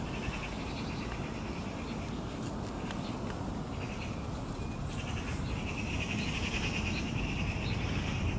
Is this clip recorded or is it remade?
recorded